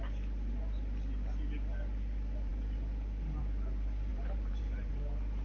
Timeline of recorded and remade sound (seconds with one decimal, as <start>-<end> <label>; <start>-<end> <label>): 0.0-4.1 recorded; 4.1-4.9 remade; 4.9-5.4 recorded